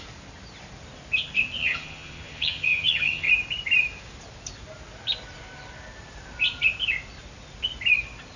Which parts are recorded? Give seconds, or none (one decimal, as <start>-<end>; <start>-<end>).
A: 0.0-1.6; 3.3-8.4